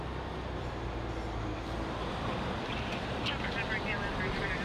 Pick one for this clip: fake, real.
real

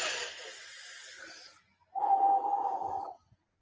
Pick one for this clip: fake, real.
real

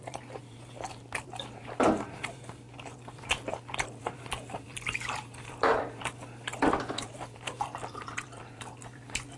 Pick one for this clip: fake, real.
fake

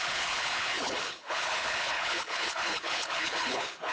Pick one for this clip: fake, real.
fake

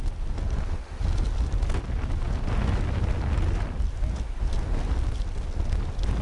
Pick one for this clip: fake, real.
real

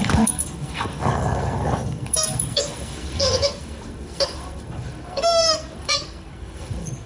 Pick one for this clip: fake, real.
fake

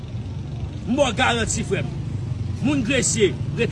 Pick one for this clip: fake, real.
real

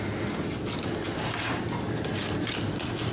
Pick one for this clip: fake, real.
real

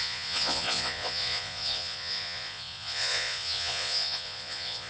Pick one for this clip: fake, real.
fake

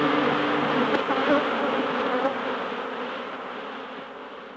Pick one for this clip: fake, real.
real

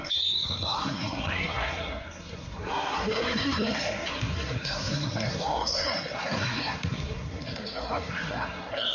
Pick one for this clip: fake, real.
fake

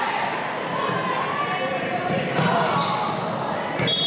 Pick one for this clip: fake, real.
real